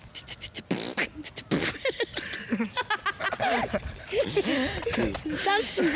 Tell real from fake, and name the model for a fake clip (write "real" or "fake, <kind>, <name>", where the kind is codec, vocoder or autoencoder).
real